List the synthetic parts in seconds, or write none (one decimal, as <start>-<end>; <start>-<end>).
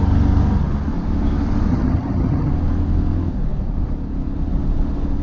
1.7-2.5